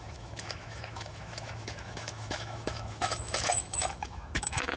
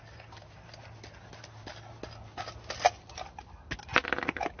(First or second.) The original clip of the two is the second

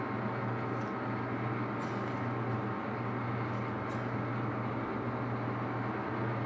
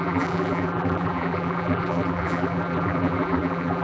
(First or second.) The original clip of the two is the first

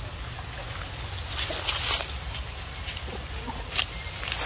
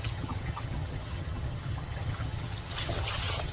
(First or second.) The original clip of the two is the first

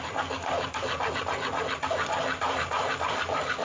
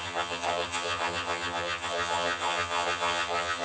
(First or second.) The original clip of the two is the first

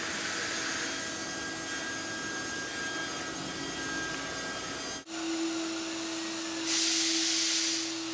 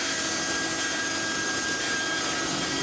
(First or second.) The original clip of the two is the first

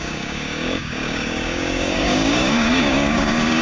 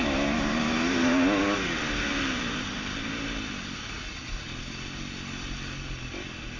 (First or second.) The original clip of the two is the second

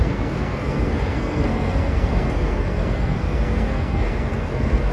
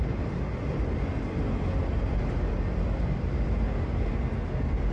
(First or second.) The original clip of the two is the second